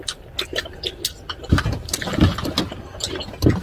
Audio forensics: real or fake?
real